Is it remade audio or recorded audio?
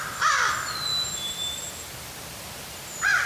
recorded